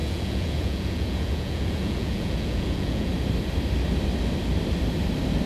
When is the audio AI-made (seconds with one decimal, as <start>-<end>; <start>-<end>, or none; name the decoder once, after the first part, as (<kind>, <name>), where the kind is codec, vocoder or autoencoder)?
0.0-3.1 (vocoder, Vocos)